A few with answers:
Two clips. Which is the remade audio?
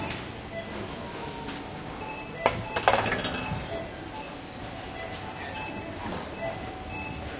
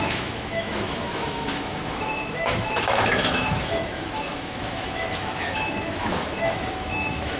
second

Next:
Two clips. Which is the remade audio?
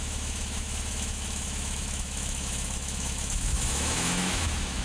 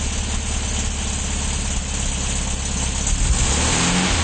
first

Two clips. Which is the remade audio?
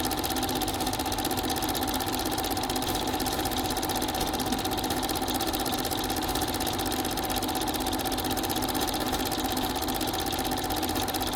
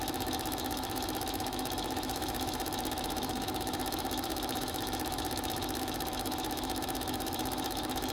second